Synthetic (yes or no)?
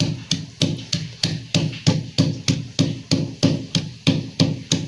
no